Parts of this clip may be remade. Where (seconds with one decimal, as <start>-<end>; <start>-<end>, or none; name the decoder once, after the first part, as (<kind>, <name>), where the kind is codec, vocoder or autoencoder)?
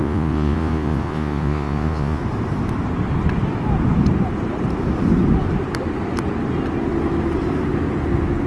0.0-2.2 (vocoder, Vocos)